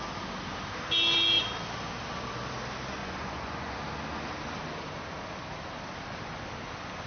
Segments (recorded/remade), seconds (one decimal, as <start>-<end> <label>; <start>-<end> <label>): 0.0-3.0 recorded; 3.0-3.8 remade; 3.8-7.1 recorded